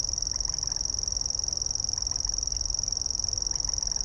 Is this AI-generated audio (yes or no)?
no